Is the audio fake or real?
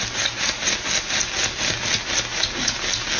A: real